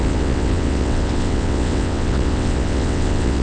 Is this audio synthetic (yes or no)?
yes